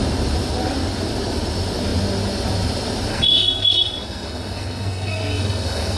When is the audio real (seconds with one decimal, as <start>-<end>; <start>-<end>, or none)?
0.0-3.1